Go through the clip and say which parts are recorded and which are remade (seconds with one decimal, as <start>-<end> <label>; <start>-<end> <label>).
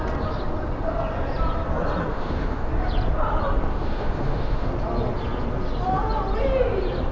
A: 0.0-2.1 recorded; 2.1-2.7 remade; 2.7-3.7 recorded; 3.7-4.7 remade; 4.7-7.1 recorded